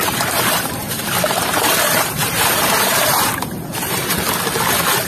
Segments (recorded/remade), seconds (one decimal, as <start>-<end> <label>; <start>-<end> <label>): 0.0-3.1 remade; 3.1-5.1 recorded